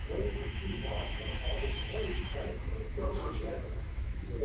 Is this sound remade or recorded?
remade